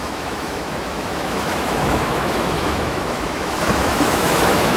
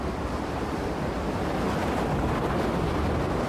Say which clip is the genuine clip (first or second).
second